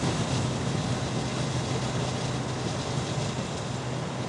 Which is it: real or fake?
real